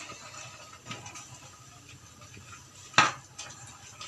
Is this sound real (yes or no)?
yes